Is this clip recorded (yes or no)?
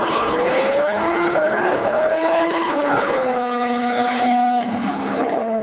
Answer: no